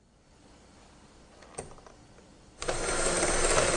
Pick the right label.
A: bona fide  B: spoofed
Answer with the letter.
B